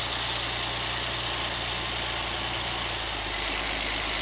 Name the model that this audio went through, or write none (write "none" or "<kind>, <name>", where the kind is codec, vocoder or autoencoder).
none